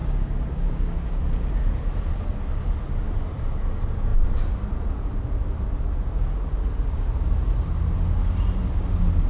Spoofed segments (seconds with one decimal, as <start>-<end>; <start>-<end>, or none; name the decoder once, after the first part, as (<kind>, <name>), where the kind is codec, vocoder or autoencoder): 0.0-1.2 (codec, DAC)